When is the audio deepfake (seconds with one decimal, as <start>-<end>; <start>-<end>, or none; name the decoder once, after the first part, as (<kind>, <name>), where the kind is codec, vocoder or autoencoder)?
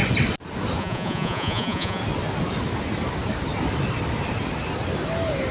0.8-2.0 (vocoder, Vocos)